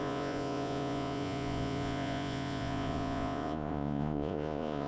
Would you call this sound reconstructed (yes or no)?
yes